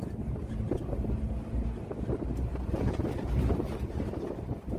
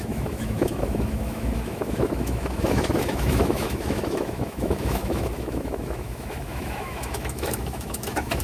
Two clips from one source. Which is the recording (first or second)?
first